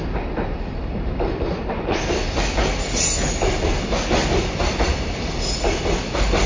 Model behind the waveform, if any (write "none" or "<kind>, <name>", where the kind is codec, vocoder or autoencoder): none